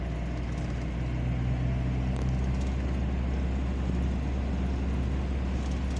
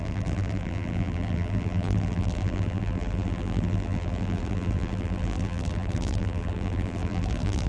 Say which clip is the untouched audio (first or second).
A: first